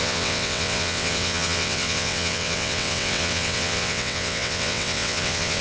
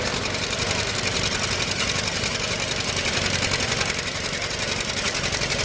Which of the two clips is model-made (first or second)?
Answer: first